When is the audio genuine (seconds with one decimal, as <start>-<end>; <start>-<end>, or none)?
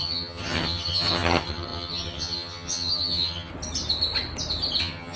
3.5-4.8